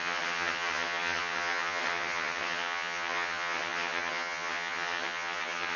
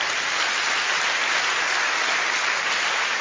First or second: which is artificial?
first